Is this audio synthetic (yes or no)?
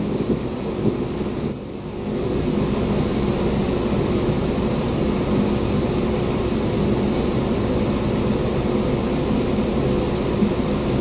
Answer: no